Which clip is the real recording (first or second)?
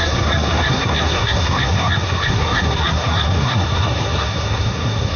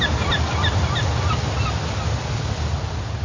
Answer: second